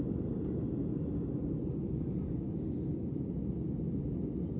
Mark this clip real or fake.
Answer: real